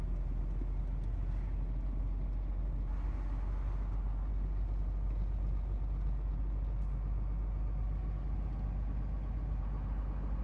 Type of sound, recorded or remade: recorded